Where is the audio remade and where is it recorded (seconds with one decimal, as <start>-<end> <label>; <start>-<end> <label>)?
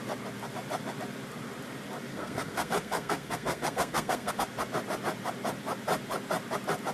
0.0-2.1 recorded; 2.1-4.3 remade; 4.3-6.9 recorded